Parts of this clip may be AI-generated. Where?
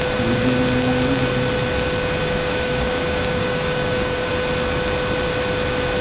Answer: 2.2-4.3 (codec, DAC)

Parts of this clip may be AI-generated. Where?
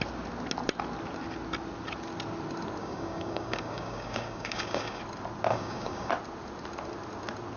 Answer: 2.8-5.0 (codec, DAC); 5.5-6.1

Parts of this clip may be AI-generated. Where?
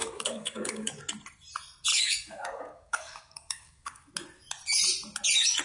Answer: 0.0-1.0 (codec, DAC); 1.9-4.1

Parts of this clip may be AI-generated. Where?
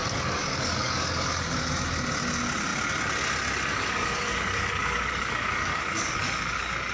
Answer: 0.0-1.3 (codec, DAC); 3.7-6.9